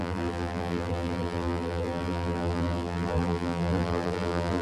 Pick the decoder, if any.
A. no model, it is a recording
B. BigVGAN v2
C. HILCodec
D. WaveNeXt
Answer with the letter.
B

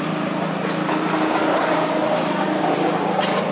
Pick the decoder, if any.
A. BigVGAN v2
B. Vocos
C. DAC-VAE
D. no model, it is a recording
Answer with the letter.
D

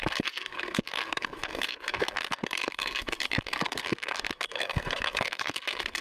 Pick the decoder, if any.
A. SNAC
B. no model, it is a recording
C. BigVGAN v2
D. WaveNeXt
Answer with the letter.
A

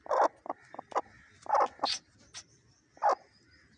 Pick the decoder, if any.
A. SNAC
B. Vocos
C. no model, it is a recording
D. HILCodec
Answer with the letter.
C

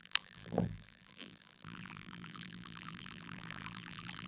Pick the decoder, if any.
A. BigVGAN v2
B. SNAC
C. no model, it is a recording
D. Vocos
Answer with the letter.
A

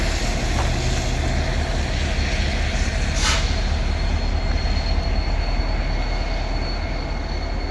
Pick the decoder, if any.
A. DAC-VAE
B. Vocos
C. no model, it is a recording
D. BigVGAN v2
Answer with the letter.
C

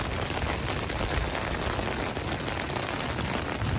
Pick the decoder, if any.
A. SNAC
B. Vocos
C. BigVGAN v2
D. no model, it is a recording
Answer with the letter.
D